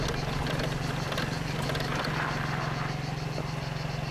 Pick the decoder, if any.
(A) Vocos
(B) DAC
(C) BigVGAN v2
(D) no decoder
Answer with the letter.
D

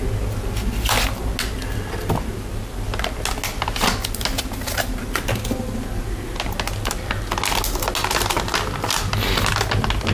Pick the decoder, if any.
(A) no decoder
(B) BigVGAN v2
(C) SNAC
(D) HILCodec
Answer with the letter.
A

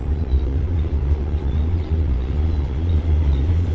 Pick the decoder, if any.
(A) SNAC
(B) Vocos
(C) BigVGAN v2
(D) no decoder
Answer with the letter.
B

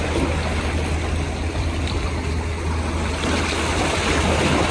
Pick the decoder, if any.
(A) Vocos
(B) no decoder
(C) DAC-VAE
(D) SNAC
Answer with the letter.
B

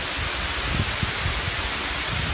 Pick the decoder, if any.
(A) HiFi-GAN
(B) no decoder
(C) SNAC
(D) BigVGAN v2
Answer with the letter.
B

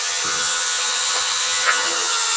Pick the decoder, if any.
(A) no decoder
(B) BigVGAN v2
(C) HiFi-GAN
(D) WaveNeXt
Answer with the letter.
C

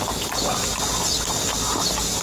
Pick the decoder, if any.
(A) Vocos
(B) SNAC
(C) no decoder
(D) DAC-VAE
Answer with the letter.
C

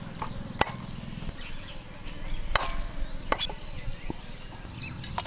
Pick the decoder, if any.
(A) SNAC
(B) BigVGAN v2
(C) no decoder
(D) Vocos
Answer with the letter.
C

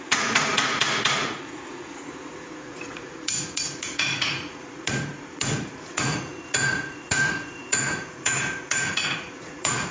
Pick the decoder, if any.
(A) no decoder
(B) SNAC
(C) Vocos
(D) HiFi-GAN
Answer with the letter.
C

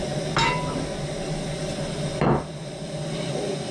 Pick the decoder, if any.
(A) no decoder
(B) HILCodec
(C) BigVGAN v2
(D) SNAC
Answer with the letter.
A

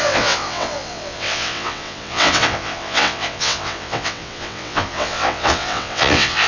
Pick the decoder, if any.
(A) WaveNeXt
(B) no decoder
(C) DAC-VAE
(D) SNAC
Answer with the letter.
A